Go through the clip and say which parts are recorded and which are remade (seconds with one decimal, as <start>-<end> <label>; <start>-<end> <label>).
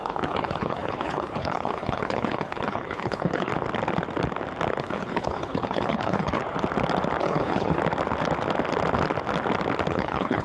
0.0-3.5 remade; 3.5-4.8 recorded; 4.8-6.4 remade; 6.4-7.2 recorded; 7.2-7.8 remade; 7.8-9.9 recorded; 9.9-10.4 remade